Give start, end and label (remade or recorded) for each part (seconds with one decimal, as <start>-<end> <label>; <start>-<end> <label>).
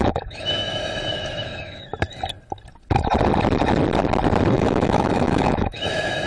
0.0-1.9 remade; 1.9-4.5 recorded; 4.5-6.3 remade